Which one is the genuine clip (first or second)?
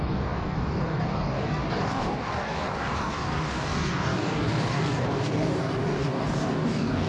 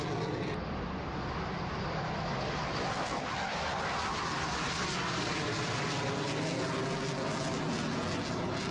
second